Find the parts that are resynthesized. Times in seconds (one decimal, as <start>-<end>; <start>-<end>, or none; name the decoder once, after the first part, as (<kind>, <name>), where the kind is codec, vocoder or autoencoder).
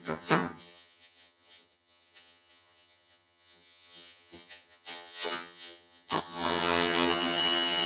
0.0-7.9 (vocoder, HiFi-GAN)